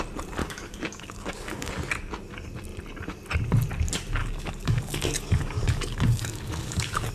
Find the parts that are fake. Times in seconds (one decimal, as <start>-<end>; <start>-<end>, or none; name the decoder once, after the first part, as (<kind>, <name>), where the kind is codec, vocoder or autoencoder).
0.4-1.7 (codec, DAC); 4.2-7.1